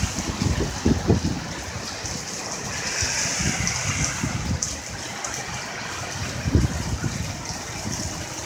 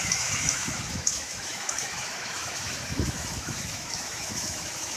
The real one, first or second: first